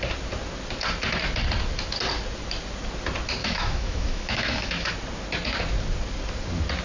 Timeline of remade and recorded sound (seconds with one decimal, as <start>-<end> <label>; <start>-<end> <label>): 0.0-3.4 recorded; 3.4-4.9 remade; 4.9-6.8 recorded